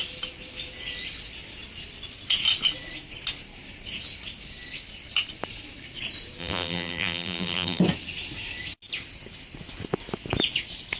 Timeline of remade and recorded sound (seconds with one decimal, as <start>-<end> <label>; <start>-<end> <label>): 0.0-6.4 recorded; 6.4-7.8 remade; 7.8-11.0 recorded

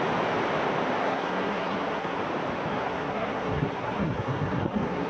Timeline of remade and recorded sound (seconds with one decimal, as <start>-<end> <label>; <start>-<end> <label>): 0.0-1.0 recorded; 1.0-2.2 remade; 2.2-2.7 recorded; 2.7-5.1 remade